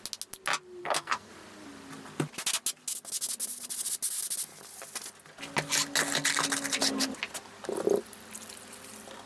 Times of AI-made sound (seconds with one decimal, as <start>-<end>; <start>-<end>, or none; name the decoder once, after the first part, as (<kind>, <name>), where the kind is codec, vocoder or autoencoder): 0.8-1.3 (codec, SNAC)